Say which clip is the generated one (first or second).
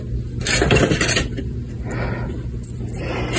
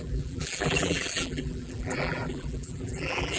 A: second